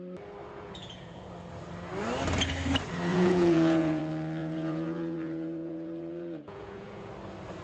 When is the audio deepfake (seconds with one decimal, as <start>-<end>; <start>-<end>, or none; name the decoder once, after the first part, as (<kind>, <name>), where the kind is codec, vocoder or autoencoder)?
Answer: 0.4-1.3 (vocoder, Vocos); 3.1-4.0; 4.4-7.1